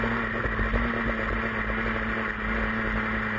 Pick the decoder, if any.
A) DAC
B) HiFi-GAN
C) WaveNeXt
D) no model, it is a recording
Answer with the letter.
D